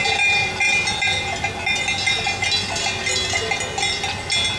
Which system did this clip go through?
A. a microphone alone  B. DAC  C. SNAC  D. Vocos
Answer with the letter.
A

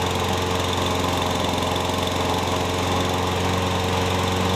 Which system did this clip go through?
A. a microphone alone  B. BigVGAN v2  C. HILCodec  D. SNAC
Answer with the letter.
A